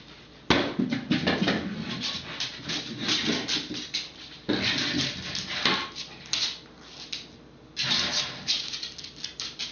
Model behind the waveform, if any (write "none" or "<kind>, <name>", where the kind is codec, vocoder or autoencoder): none